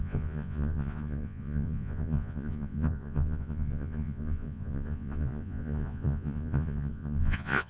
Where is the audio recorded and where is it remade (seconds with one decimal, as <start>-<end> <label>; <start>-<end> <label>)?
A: 0.0-7.7 remade